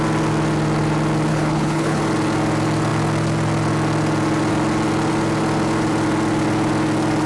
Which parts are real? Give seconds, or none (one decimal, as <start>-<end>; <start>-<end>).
0.0-1.3; 2.0-7.3